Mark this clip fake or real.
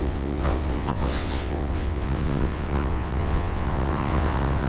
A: fake